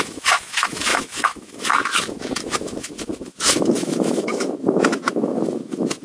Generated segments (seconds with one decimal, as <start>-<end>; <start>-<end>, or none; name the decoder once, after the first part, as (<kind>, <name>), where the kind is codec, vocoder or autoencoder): 0.0-6.0 (autoencoder, DAC-VAE)